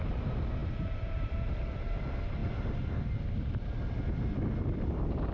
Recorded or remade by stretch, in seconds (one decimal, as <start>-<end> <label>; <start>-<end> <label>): 0.0-2.4 remade; 2.4-4.6 recorded; 4.6-5.3 remade